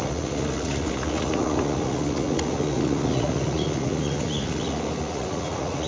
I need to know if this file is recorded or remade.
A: remade